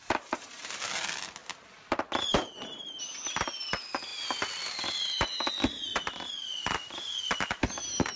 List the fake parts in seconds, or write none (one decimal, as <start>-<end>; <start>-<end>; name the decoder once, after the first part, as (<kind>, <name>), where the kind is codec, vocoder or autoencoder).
none